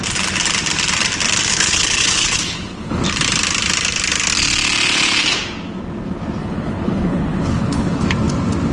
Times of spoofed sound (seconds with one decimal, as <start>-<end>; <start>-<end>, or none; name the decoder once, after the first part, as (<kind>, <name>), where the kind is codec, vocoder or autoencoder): 1.5-3.0 (codec, HILCodec); 6.4-8.0